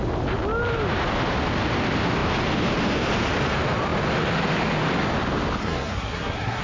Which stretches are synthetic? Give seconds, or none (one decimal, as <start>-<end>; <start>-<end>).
5.6-6.6